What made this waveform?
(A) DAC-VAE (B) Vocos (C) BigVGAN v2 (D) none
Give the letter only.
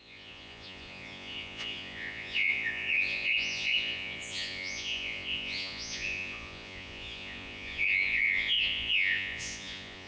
B